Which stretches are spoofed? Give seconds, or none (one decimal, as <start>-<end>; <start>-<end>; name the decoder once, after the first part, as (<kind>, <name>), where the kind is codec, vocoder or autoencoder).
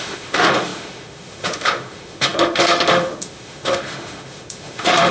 0.0-5.1 (autoencoder, DAC-VAE)